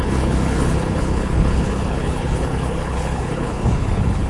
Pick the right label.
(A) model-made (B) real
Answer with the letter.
A